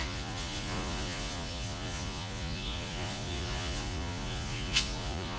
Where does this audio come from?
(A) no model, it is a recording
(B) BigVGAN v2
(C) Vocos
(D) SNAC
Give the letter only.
C